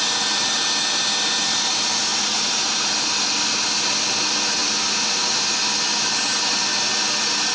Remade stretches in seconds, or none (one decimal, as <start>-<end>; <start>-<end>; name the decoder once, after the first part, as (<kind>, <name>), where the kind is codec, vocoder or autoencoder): none